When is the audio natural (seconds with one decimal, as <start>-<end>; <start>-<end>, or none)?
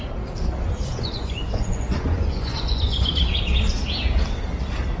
0.0-0.9; 3.1-5.0